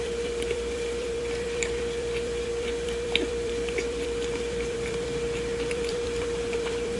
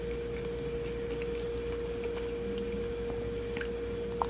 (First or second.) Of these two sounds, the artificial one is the first